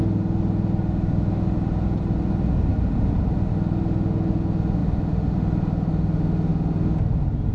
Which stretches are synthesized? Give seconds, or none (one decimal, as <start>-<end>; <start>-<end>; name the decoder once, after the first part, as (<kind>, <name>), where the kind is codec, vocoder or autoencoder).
2.7-3.2 (vocoder, BigVGAN v2)